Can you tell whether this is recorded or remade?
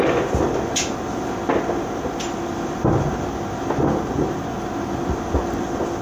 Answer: recorded